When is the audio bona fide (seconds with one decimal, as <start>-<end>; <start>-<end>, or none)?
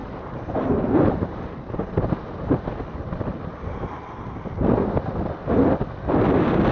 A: 2.7-6.7